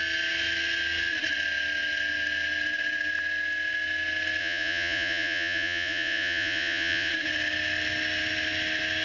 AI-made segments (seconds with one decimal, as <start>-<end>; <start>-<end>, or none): 4.4-7.1